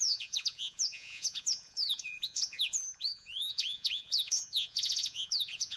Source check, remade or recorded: remade